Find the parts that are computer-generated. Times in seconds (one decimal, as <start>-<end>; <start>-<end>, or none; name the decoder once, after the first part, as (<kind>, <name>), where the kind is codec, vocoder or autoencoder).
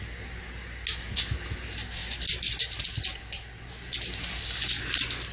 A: none